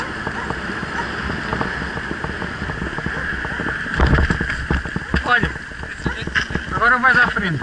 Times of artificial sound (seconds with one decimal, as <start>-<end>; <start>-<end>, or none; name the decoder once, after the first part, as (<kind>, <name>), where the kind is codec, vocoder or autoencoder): none